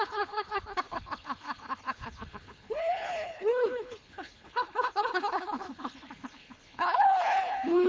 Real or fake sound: fake